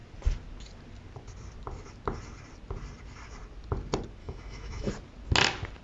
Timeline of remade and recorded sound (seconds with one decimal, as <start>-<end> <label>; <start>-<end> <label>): 0.0-4.2 recorded; 4.2-4.9 remade; 4.9-5.8 recorded